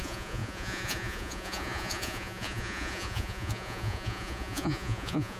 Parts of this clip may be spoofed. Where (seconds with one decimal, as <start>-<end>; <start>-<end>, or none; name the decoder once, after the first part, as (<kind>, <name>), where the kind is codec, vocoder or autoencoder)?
0.0-5.4 (vocoder, Vocos)